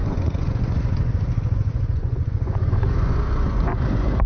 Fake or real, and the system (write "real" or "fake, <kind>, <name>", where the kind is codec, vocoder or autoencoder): fake, vocoder, Vocos